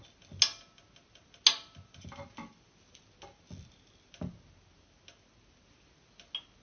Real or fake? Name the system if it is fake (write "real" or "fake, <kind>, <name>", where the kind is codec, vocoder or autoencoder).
real